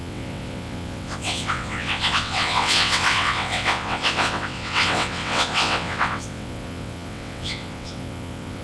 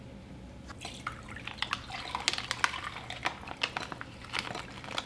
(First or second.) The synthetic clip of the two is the first